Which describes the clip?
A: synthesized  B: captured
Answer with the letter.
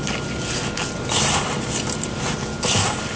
B